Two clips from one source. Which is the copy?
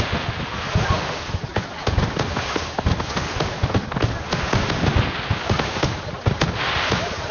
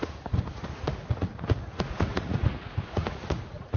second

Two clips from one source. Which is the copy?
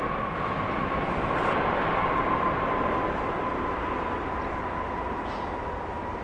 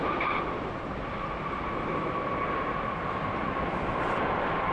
second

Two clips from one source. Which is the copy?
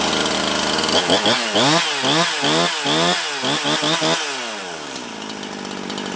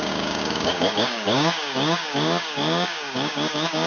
second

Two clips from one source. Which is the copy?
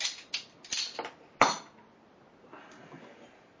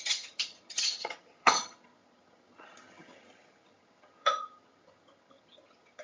second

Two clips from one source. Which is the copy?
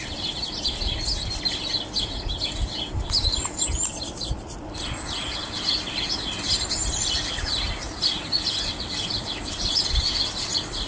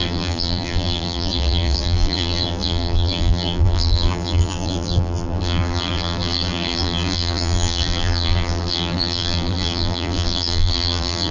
second